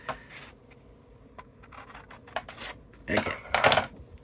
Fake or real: real